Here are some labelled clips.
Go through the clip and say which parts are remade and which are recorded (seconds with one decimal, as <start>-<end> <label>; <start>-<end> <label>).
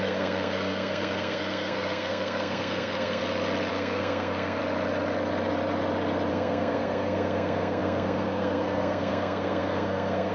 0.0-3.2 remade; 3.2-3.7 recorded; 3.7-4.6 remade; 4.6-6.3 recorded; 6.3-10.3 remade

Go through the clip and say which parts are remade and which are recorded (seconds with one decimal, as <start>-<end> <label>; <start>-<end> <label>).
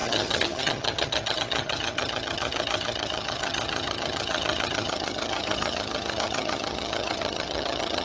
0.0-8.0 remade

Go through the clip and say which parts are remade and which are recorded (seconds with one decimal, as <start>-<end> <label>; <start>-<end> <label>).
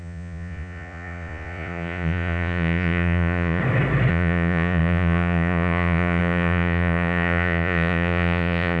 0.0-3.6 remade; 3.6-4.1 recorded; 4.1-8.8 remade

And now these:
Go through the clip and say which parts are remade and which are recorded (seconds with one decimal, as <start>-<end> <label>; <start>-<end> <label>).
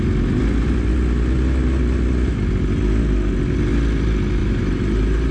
0.0-4.4 recorded; 4.4-5.3 remade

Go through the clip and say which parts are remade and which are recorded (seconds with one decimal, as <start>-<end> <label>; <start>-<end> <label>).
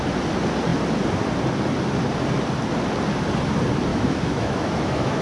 0.0-3.9 recorded; 3.9-5.2 remade